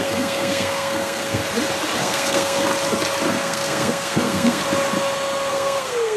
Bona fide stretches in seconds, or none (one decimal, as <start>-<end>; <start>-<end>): 1.4-2.0; 2.7-3.3; 4.6-5.5